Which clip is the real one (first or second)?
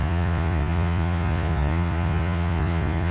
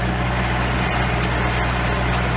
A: second